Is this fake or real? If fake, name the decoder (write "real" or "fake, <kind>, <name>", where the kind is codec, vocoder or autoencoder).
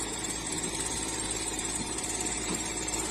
fake, vocoder, BigVGAN v2